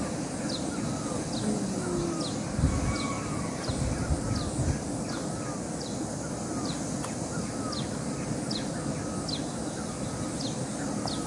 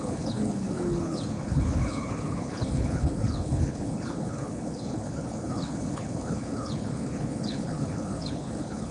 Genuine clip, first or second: first